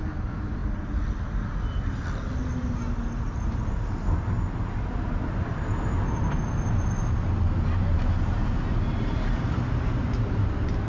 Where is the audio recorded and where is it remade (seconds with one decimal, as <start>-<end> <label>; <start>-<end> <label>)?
0.0-10.9 recorded